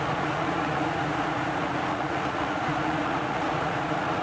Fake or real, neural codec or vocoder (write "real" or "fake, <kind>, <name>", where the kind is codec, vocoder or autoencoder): fake, vocoder, Vocos